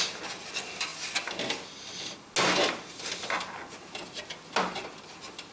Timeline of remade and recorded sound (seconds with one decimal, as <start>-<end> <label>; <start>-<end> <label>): 0.0-5.5 recorded